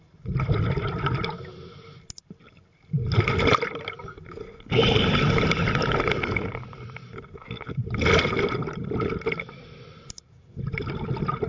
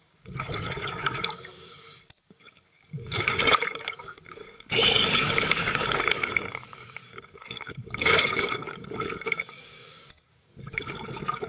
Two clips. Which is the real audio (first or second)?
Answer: first